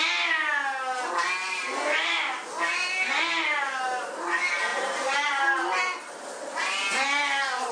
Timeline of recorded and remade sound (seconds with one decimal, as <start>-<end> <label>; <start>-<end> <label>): 0.0-1.4 recorded; 1.4-3.6 remade; 3.6-4.7 recorded; 4.7-5.8 remade; 5.8-7.7 recorded